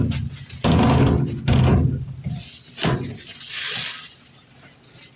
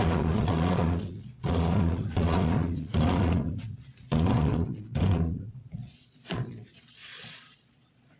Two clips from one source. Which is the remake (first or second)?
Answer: second